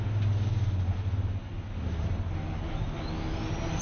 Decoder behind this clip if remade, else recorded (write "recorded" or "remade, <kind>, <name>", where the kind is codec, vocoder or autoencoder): recorded